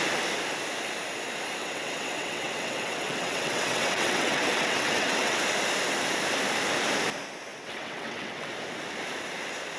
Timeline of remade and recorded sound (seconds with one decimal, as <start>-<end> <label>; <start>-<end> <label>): 0.0-1.6 recorded; 1.6-5.4 remade; 5.4-7.5 recorded; 7.5-8.5 remade; 8.5-9.8 recorded